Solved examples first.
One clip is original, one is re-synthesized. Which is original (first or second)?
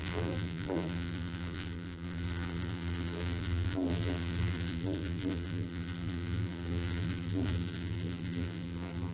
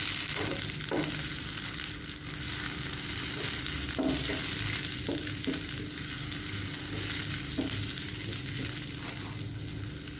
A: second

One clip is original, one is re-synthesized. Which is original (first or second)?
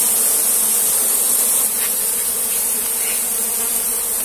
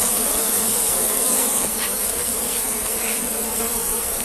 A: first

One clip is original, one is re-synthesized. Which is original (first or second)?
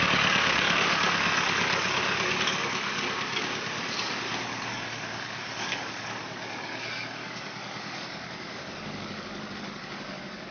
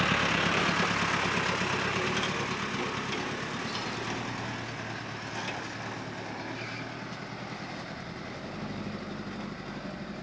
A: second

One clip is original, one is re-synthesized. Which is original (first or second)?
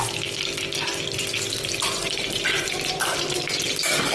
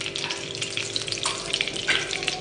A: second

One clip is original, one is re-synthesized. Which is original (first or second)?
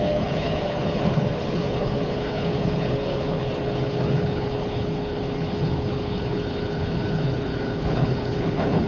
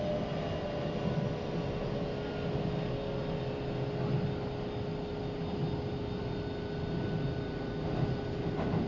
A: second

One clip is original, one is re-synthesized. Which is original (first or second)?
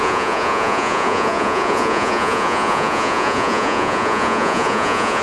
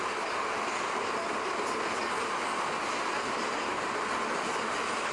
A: second